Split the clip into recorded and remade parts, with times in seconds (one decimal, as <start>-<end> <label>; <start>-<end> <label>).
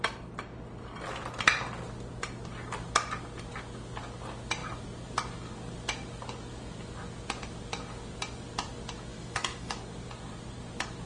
0.0-9.1 recorded; 9.1-9.8 remade; 9.8-11.1 recorded